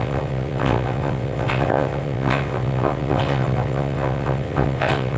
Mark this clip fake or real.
fake